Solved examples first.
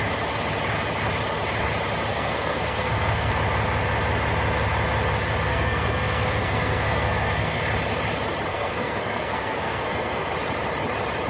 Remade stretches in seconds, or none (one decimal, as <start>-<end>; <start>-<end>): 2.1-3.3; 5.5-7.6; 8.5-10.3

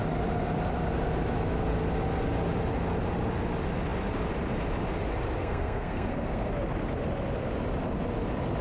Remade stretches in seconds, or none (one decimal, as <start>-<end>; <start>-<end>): 5.4-6.5

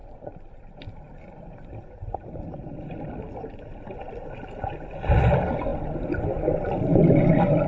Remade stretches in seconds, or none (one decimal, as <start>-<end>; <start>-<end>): none

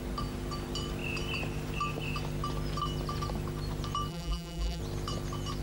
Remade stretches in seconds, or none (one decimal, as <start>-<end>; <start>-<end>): 4.1-4.8

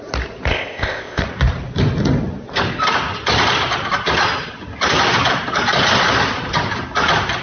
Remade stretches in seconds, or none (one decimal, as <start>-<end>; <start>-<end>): 0.5-1.2

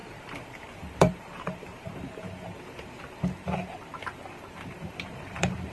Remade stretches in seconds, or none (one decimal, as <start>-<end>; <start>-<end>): 0.0-5.7